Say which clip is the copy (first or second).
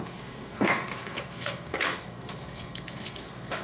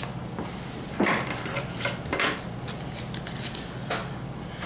first